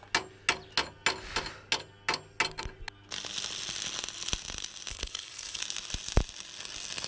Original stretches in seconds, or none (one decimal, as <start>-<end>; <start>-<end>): 0.0-4.9; 5.6-7.1